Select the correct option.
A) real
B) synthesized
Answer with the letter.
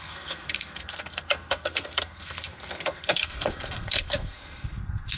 B